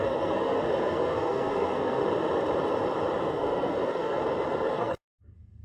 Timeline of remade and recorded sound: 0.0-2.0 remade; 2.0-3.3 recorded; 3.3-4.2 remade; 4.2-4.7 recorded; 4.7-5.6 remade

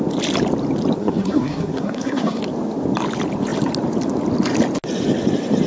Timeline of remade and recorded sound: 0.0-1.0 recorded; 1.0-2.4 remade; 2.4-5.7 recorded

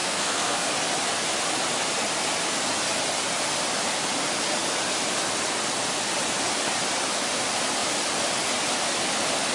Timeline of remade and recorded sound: 0.0-0.7 remade; 0.7-9.5 recorded